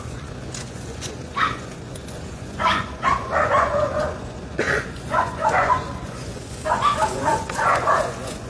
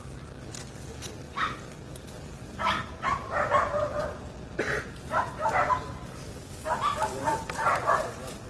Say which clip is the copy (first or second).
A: first